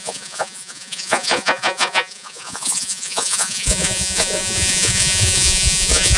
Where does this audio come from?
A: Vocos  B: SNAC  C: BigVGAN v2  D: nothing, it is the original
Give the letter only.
A